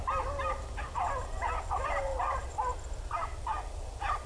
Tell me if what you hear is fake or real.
real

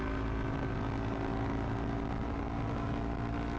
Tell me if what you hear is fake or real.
real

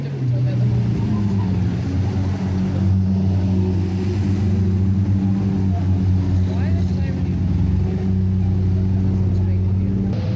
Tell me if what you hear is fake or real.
real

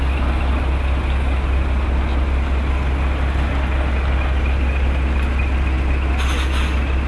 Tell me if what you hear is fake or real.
real